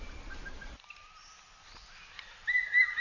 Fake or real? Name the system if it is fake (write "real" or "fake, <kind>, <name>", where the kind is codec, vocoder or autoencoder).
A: real